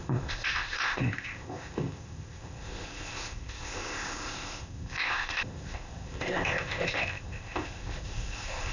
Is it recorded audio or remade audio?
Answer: remade